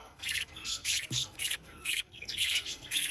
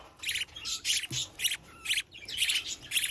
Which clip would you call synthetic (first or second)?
first